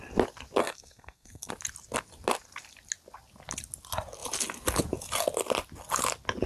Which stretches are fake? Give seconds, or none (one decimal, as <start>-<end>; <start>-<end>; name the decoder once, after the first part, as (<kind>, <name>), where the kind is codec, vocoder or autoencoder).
0.6-1.5 (codec, SNAC)